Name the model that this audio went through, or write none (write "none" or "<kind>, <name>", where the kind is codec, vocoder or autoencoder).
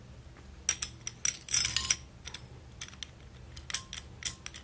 none